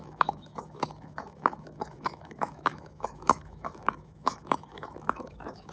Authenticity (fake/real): fake